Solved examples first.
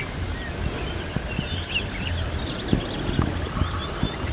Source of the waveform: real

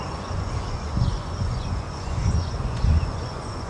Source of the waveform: fake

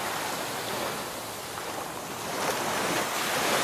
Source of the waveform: real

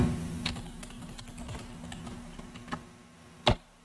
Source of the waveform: real